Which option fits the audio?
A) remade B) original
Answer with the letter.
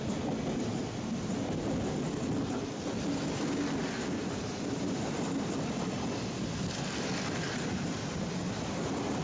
B